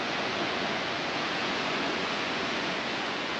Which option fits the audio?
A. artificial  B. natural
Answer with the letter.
A